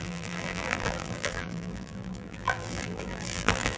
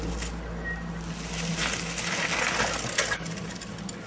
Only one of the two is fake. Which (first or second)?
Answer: first